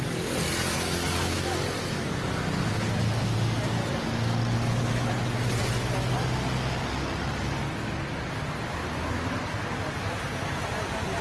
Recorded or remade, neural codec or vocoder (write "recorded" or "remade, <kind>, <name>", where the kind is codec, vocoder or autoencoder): recorded